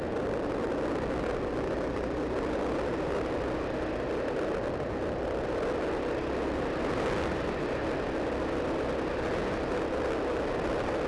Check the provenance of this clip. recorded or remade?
recorded